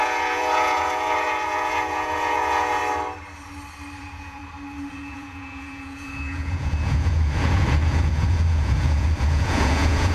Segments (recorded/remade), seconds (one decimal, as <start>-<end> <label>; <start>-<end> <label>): 0.0-2.8 remade; 2.8-4.0 recorded; 4.0-4.4 remade; 4.4-4.9 recorded; 4.9-10.1 remade